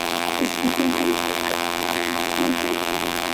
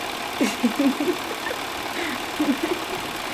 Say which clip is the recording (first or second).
second